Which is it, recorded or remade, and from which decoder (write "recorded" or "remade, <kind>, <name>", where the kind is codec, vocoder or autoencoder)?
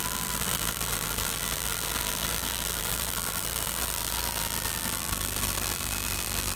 remade, vocoder, BigVGAN v2